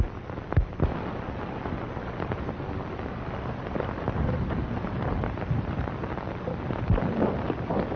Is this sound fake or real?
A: real